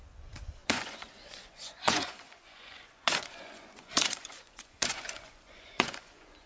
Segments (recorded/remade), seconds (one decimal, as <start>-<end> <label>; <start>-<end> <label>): 0.0-6.5 remade